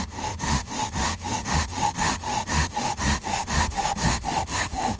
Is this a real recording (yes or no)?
no